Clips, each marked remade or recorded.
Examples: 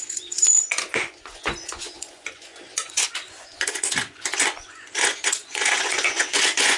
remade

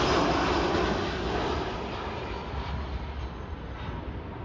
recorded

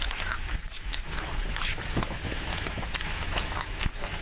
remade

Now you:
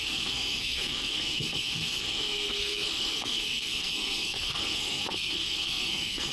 remade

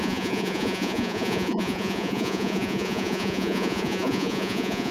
remade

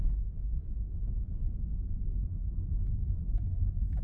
recorded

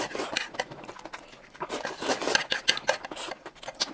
recorded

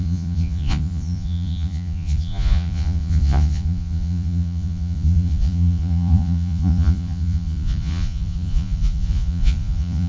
remade